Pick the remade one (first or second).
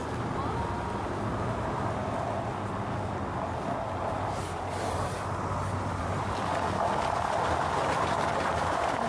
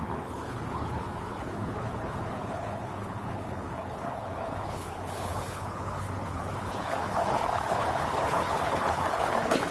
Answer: second